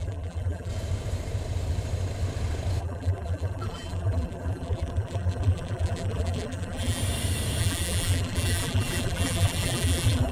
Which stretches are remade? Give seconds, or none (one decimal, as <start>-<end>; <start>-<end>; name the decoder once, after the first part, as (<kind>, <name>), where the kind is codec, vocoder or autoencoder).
0.0-0.7 (vocoder, BigVGAN v2); 2.8-7.0; 7.6-10.3